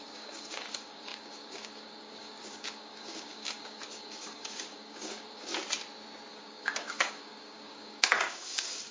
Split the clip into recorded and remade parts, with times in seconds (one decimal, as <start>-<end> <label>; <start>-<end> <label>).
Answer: 0.0-5.5 remade; 5.5-6.3 recorded; 6.3-8.9 remade